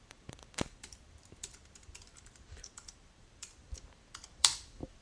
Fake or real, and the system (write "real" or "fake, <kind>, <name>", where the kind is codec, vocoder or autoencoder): fake, vocoder, BigVGAN v2